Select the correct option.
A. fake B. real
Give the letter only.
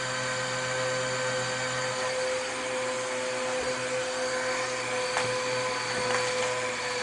B